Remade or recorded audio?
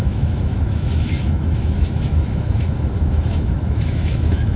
remade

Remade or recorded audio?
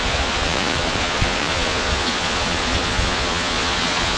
remade